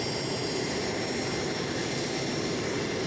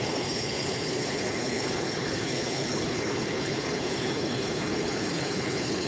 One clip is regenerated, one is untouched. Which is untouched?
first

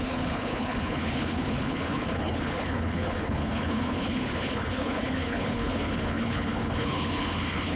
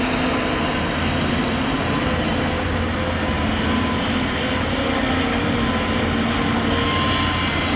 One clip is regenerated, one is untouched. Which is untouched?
second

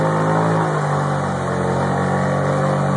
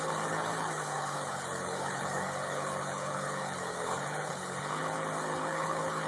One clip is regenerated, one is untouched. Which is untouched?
first